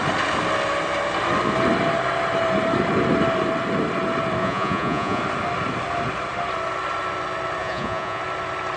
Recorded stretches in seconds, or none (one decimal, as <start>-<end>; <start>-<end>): 0.0-4.4; 5.2-7.6; 8.2-8.8